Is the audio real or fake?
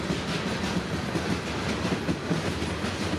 real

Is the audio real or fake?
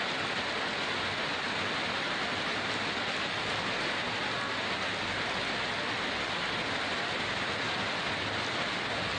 real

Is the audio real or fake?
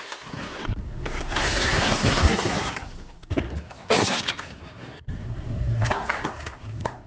fake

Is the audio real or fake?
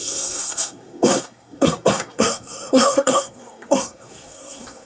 fake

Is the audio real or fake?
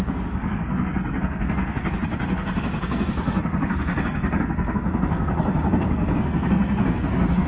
fake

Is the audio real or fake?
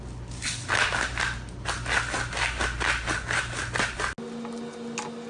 real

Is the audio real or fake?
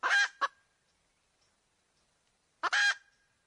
real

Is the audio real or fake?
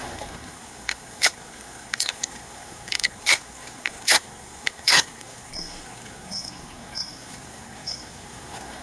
fake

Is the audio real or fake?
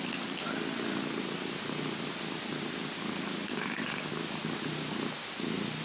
real